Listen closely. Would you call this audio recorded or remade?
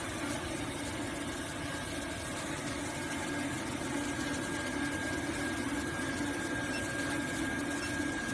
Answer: recorded